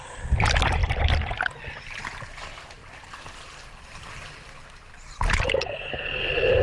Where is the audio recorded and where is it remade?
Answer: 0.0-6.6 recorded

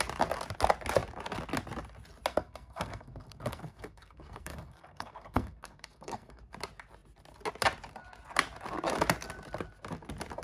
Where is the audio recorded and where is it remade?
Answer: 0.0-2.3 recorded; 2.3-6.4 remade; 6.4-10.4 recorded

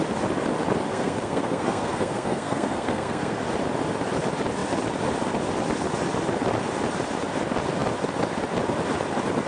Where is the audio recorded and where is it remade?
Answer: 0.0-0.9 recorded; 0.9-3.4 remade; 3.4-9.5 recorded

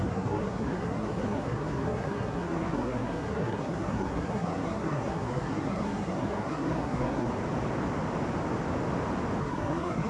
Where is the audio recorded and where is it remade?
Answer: 0.0-7.3 remade; 7.3-9.4 recorded; 9.4-10.1 remade

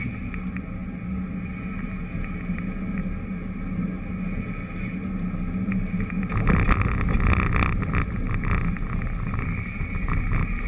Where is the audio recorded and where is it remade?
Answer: 0.0-10.7 recorded

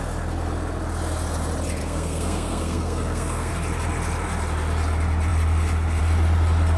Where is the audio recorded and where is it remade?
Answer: 0.0-1.8 recorded; 1.8-3.5 remade; 3.5-6.8 recorded

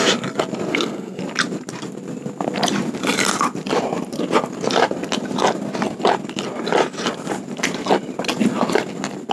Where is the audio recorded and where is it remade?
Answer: 0.0-0.7 recorded; 0.7-1.2 remade; 1.2-9.3 recorded

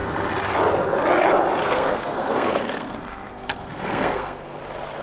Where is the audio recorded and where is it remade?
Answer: 0.0-1.6 recorded; 1.6-4.6 remade; 4.6-5.0 recorded